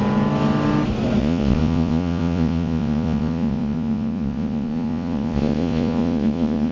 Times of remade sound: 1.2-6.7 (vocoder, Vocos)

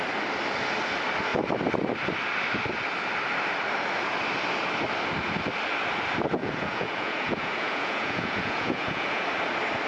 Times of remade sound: 6.4-9.2 (vocoder, Vocos)